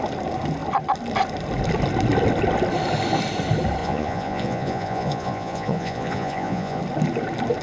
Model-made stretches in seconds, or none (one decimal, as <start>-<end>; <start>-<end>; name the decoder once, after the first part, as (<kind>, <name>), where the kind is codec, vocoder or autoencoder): 3.8-6.8 (vocoder, Vocos)